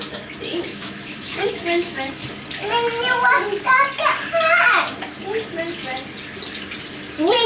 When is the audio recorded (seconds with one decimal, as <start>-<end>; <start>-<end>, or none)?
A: 0.0-0.5; 2.1-7.5